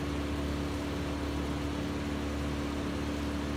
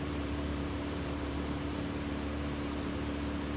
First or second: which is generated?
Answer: second